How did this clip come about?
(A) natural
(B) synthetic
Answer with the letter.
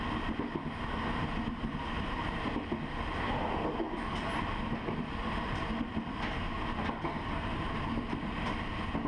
A